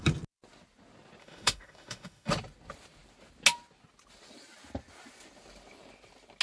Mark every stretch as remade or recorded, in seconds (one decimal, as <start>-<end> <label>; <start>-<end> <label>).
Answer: 0.0-1.2 recorded; 1.2-2.3 remade; 2.3-6.4 recorded